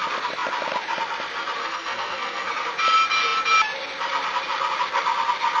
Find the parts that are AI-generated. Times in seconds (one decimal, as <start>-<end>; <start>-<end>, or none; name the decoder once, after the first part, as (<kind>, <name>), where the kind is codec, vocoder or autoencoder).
1.6-2.5 (codec, SNAC)